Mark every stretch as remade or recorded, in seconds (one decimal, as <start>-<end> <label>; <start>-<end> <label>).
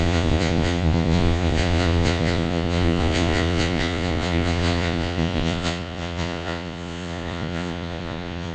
0.0-8.5 remade